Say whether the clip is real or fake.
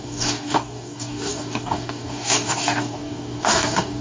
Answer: fake